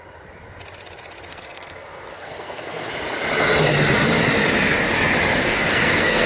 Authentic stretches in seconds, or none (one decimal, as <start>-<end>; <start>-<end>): 0.0-1.3; 2.9-5.4